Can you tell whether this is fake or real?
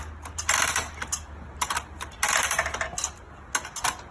real